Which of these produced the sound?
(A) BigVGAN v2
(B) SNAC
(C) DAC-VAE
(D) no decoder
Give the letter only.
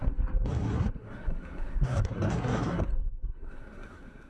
B